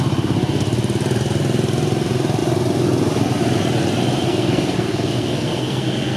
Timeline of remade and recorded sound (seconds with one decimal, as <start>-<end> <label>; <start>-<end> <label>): 0.0-4.3 recorded; 4.3-6.2 remade